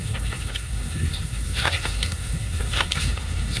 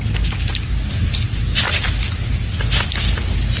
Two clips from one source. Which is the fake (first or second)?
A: first